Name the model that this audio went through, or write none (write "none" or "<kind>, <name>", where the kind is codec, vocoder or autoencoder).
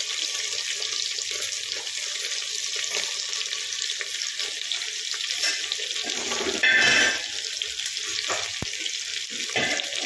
none